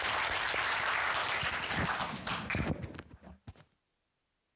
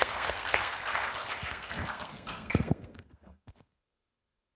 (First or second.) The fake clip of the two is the second